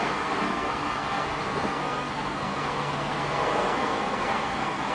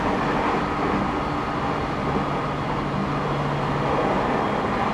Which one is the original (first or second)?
second